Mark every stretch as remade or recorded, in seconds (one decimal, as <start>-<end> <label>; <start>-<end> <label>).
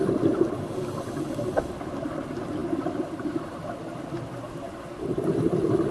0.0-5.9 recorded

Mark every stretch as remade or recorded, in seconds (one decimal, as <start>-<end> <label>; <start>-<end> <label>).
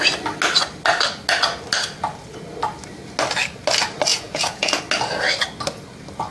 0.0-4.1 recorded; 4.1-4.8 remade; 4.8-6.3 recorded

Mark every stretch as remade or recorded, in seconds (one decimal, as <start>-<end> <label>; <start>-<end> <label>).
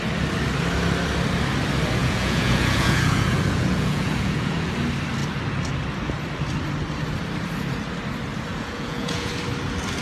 0.0-2.0 recorded; 2.0-4.7 remade; 4.7-8.5 recorded; 8.5-9.3 remade; 9.3-10.0 recorded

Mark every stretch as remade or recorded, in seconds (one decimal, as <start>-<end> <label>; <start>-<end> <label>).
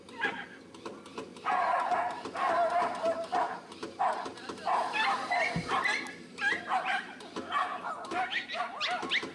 0.0-9.3 recorded